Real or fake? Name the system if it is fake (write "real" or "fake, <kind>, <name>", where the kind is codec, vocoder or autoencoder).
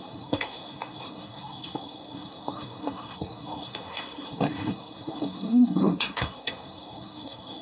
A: fake, codec, SNAC